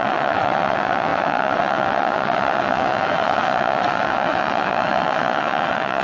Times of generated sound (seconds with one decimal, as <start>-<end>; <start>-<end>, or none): 0.0-6.0